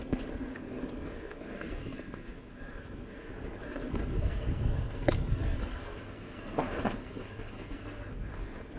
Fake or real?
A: fake